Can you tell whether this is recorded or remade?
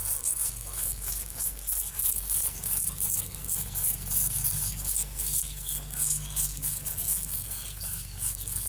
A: remade